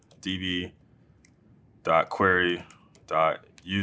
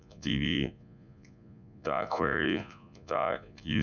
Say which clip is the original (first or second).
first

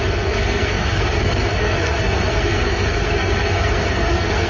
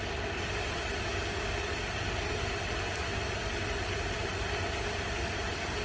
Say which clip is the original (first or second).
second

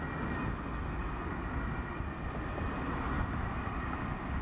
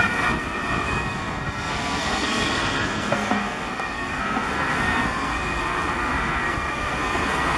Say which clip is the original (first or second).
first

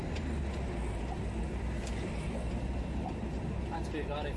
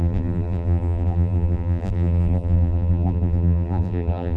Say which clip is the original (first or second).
first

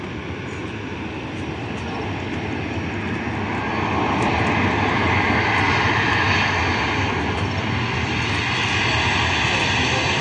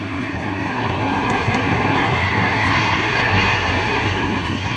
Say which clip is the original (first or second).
first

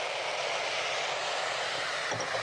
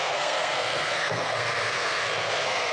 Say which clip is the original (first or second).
first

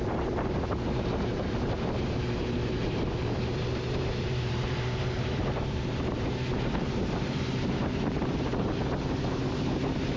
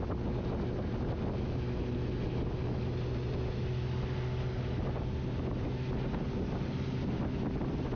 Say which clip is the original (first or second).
second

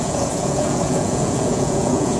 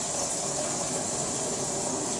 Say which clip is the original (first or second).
second